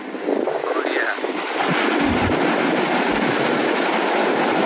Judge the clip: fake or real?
real